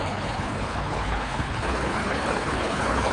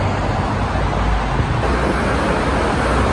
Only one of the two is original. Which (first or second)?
second